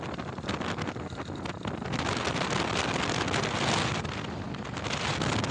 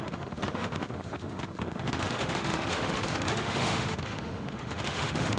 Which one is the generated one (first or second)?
second